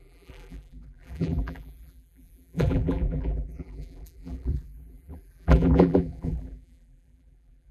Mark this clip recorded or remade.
remade